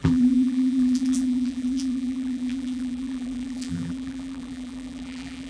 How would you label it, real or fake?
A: fake